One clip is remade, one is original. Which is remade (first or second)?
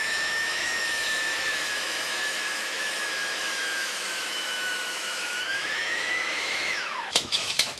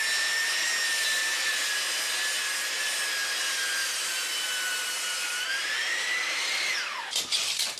first